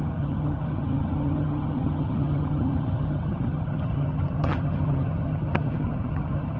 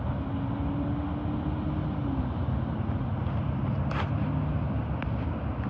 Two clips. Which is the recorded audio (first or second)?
second